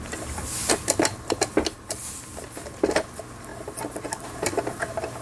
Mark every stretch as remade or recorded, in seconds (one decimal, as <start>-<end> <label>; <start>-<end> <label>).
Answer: 0.0-5.2 recorded